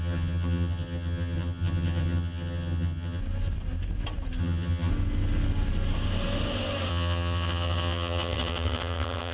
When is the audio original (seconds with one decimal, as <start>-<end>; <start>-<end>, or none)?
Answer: 3.2-4.4; 4.9-6.9